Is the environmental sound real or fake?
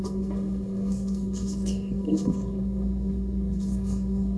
fake